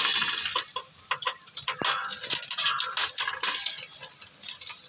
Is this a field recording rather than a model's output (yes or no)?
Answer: yes